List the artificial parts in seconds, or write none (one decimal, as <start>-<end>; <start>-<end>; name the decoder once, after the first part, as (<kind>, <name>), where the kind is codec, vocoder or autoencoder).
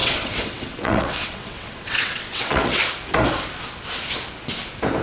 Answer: 0.0-2.8 (vocoder, WaveNeXt)